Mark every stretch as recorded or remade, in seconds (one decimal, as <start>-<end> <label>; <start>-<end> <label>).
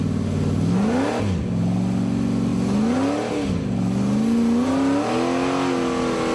0.0-6.3 recorded